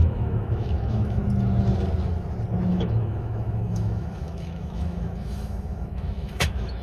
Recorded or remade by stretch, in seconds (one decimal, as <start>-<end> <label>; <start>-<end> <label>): 0.0-1.2 remade; 1.2-2.7 recorded; 2.7-6.8 remade